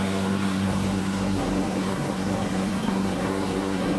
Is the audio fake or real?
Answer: fake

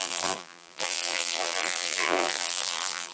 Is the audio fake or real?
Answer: fake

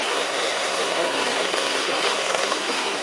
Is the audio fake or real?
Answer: fake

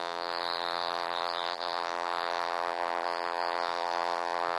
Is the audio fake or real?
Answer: fake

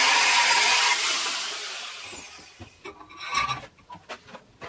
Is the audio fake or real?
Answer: real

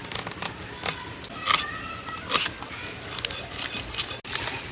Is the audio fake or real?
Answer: real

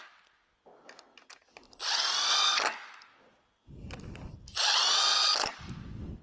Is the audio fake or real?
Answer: real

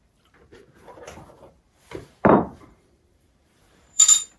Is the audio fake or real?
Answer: fake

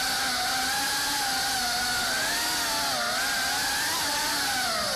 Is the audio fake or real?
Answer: real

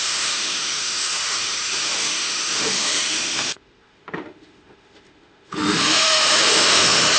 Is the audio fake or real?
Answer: fake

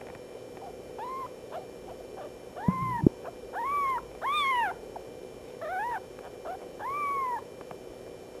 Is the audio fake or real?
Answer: real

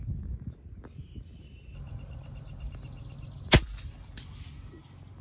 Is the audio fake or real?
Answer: real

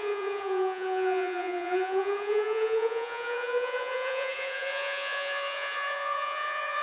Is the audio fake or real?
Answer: fake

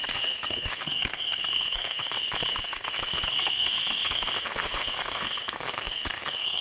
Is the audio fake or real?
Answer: fake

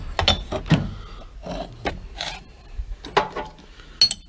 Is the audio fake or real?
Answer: real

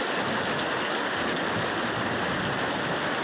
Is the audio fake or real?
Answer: real